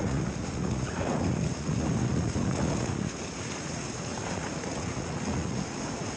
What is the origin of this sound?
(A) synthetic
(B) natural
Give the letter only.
A